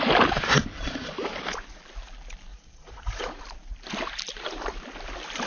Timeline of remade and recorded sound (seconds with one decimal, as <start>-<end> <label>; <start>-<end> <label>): 0.0-2.5 recorded; 2.5-3.4 remade; 3.4-5.5 recorded